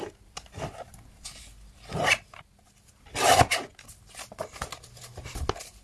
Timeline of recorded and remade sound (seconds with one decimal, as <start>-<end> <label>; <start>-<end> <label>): 0.0-5.8 recorded